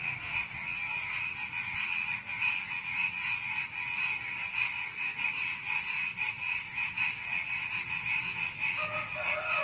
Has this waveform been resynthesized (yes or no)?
no